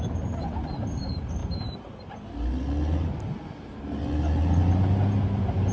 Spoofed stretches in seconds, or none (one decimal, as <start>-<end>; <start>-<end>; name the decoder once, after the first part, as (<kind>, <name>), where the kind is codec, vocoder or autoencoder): none